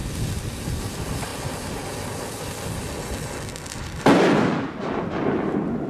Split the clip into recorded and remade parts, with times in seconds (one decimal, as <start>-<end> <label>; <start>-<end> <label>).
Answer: 0.0-5.9 recorded